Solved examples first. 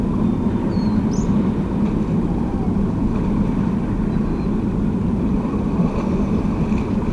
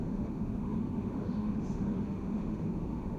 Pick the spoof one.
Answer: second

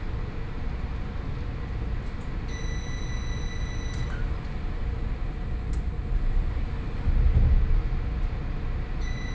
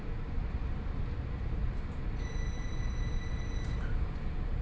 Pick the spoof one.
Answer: second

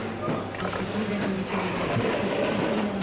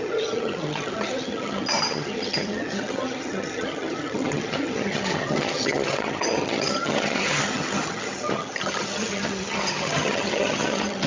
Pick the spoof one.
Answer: second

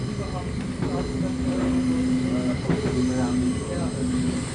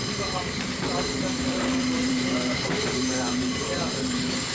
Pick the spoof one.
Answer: second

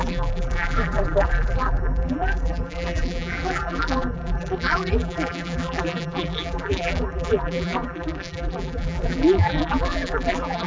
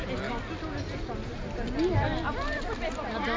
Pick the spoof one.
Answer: first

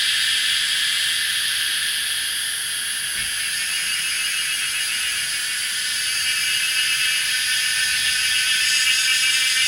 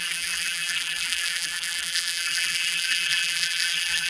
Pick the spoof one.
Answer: second